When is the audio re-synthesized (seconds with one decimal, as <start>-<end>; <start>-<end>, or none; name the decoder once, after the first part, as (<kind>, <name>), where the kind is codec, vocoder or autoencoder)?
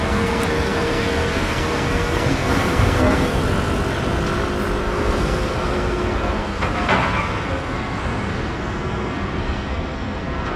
0.0-3.4 (codec, SNAC); 4.8-10.6